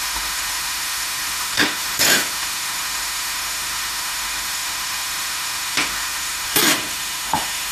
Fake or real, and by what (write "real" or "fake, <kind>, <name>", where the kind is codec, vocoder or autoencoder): fake, autoencoder, DAC-VAE